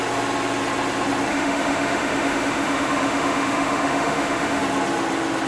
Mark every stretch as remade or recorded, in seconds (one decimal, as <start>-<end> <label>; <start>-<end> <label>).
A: 0.0-1.3 recorded; 1.3-4.6 remade; 4.6-5.5 recorded